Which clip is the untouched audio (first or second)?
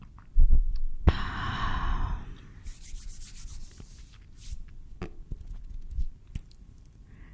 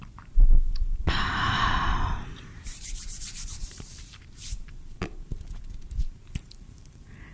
first